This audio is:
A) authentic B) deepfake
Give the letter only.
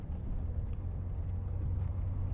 A